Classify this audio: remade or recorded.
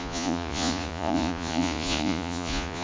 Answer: remade